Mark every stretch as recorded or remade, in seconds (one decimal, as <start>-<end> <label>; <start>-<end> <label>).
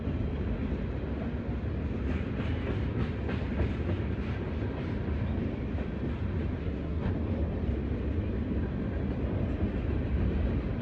0.0-6.6 recorded; 6.6-7.1 remade; 7.1-10.8 recorded